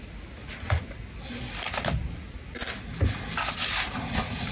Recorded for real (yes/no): yes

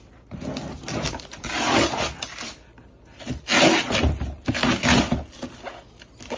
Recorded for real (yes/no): yes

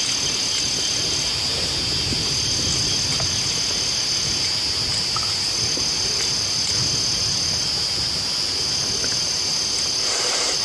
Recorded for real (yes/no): yes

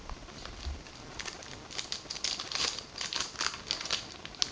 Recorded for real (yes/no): yes